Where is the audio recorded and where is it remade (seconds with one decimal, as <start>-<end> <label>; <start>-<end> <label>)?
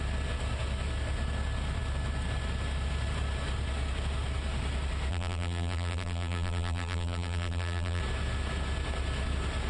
0.0-5.1 recorded; 5.1-8.0 remade; 8.0-9.7 recorded